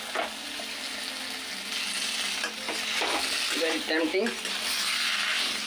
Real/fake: real